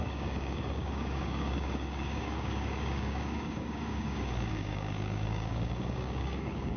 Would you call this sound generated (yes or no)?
yes